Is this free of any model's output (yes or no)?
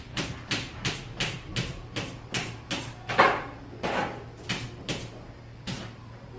yes